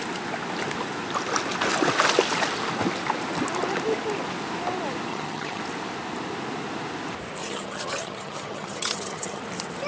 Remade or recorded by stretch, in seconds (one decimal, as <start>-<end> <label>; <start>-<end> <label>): 0.0-5.1 recorded; 5.1-5.6 remade; 5.6-7.4 recorded; 7.4-9.4 remade; 9.4-9.9 recorded